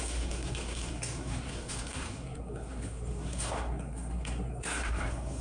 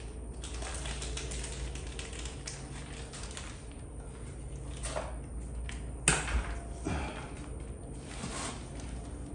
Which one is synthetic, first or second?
first